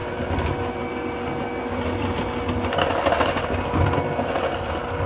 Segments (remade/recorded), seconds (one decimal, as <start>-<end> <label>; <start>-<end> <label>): 0.0-5.1 recorded